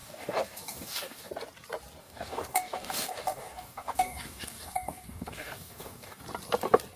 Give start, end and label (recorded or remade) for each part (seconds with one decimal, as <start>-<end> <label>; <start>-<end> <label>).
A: 0.0-1.3 remade; 1.3-2.0 recorded; 2.0-6.2 remade; 6.2-7.0 recorded